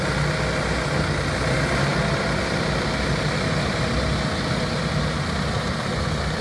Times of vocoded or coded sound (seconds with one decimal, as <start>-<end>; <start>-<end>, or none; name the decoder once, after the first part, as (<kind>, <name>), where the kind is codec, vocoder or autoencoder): none